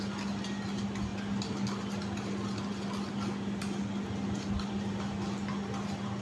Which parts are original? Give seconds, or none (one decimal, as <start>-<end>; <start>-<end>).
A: 0.0-6.2